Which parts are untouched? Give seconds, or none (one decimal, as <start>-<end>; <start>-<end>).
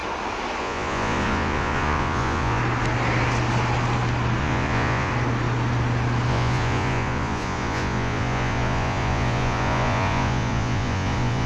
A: 0.0-0.6; 2.6-4.4; 5.1-6.3